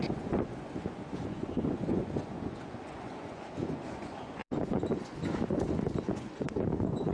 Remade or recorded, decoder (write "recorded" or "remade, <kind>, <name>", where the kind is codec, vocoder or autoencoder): remade, vocoder, Vocos